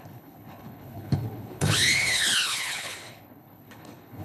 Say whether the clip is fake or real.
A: fake